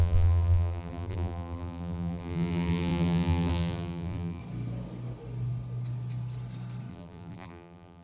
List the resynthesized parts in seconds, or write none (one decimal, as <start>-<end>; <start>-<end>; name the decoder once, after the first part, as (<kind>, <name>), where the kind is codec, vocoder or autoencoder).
0.0-4.4 (vocoder, BigVGAN v2); 6.9-8.0